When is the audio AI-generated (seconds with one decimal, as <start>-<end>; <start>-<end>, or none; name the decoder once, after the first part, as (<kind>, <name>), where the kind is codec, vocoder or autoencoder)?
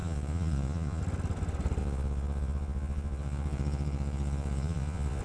0.0-1.0 (vocoder, Vocos); 1.8-5.2